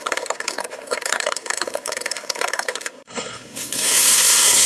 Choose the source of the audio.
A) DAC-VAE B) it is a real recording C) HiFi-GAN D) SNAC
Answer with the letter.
D